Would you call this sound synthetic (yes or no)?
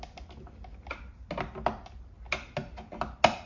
no